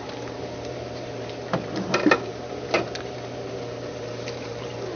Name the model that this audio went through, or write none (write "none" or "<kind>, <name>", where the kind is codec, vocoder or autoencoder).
vocoder, BigVGAN v2